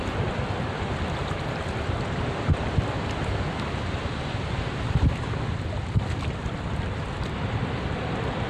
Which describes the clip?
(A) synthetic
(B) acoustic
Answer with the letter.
A